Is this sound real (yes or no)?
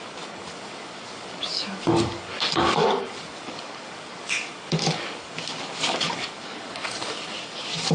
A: no